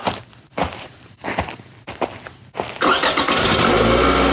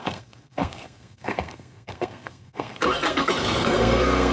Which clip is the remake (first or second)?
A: second